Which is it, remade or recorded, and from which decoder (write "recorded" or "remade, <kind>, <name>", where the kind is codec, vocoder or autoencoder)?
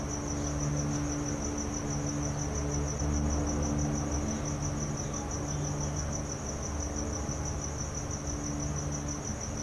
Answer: recorded